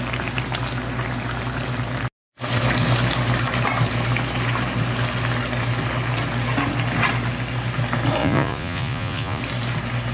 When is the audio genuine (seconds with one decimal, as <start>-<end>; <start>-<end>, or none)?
0.0-8.2; 9.4-10.1